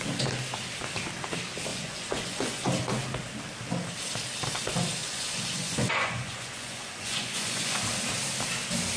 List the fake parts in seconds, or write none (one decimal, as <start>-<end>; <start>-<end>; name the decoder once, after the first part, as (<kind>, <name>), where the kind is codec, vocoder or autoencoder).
1.7-2.7 (vocoder, Vocos); 5.0-7.8